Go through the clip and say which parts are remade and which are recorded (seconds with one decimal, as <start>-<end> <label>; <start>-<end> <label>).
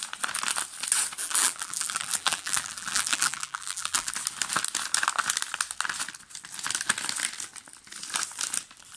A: 0.0-1.2 recorded; 1.2-4.1 remade; 4.1-9.0 recorded